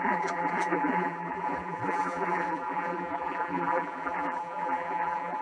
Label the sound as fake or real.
fake